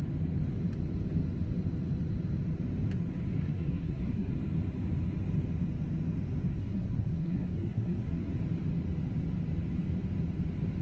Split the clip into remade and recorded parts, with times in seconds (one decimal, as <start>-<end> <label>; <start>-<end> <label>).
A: 0.0-3.4 recorded; 3.4-4.3 remade; 4.3-6.5 recorded; 6.5-8.3 remade; 8.3-10.8 recorded